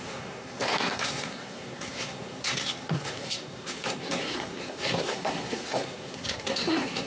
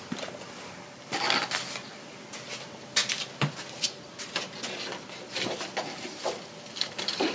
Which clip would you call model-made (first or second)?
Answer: first